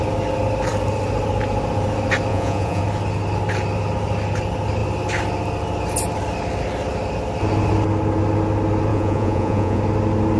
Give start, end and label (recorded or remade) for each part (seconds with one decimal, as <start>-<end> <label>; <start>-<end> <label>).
0.0-2.3 recorded; 2.3-2.8 remade; 2.8-8.9 recorded; 8.9-9.8 remade; 9.8-10.4 recorded